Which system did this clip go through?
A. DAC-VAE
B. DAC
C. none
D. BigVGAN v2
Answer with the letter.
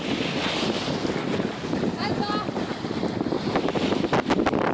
C